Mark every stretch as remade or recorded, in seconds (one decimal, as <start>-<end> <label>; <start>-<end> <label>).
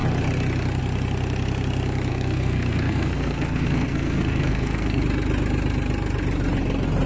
0.0-2.1 recorded; 2.1-5.0 remade; 5.0-7.1 recorded